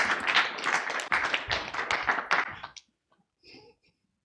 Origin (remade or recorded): recorded